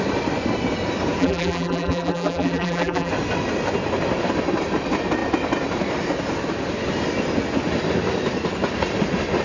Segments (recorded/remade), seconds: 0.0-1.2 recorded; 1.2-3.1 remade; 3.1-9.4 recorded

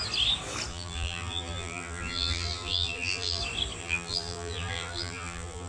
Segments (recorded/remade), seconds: 0.0-0.7 recorded; 0.7-3.4 remade; 3.4-3.8 recorded; 3.8-5.7 remade